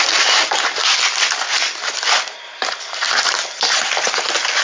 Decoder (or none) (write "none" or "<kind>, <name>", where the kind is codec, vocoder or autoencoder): none